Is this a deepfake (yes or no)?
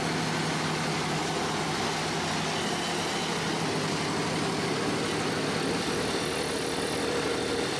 no